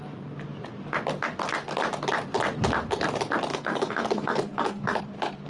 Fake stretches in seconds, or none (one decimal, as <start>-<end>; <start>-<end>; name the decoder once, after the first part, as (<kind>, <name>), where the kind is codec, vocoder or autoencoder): 3.5-5.0 (codec, SNAC)